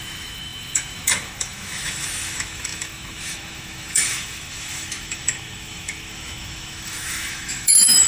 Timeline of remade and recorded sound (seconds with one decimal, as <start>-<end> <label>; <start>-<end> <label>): 0.0-8.1 remade